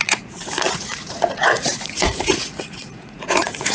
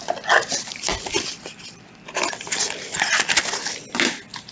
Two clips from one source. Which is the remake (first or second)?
first